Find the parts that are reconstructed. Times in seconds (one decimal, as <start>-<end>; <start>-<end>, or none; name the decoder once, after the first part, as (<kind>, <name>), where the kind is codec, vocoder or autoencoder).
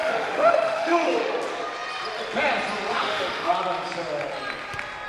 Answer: 0.0-1.3 (autoencoder, DAC-VAE); 2.9-3.5